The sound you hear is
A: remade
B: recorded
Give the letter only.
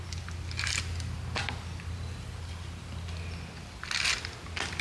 B